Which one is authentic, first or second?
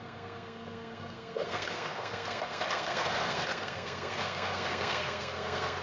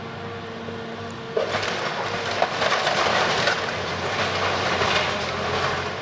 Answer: second